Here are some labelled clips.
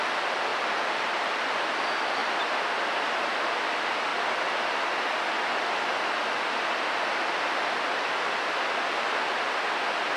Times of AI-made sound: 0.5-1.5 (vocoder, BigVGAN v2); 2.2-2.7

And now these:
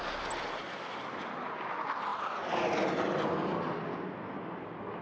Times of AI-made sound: none

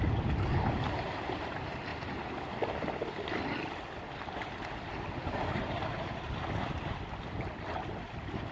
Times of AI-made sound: none

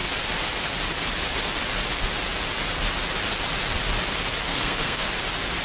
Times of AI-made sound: 4.5-5.1 (codec, SNAC)

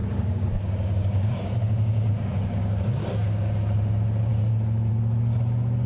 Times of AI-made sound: 0.0-3.5 (codec, DAC)

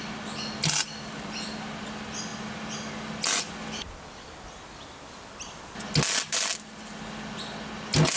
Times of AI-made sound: none

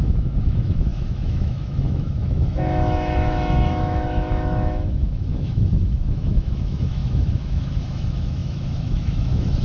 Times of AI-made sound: 0.0-9.6 (autoencoder, DAC-VAE)